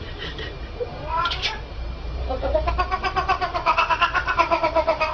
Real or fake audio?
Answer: fake